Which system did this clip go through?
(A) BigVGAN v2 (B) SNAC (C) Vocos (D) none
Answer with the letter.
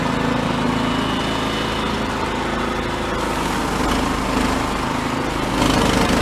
D